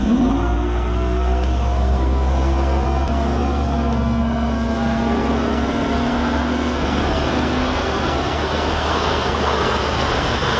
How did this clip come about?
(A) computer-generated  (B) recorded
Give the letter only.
A